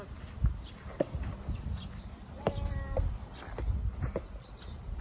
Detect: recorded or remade recorded